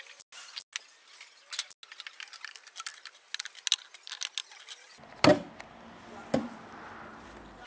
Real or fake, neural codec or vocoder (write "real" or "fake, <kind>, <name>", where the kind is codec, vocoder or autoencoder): real